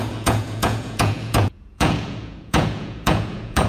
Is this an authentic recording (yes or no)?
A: no